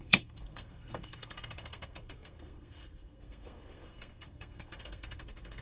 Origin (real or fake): fake